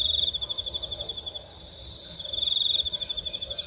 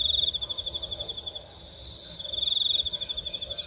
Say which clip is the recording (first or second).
second